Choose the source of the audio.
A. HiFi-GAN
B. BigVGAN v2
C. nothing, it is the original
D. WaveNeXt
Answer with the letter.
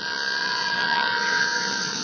D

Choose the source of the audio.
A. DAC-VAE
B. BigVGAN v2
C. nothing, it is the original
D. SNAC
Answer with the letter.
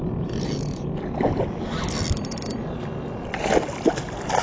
C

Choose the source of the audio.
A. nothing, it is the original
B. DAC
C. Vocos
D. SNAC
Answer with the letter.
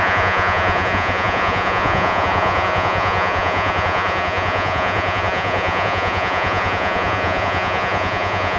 C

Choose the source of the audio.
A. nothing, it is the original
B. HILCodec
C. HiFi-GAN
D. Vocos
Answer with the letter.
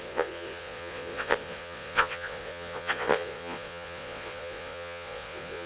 D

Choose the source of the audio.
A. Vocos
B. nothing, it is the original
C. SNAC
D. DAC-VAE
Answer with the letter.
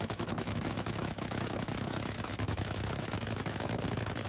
D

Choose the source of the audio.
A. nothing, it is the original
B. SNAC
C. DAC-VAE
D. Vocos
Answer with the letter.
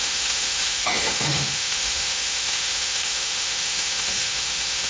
C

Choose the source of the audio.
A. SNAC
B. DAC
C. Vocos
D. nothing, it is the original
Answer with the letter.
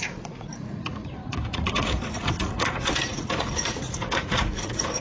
C